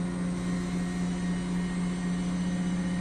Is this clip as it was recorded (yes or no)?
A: yes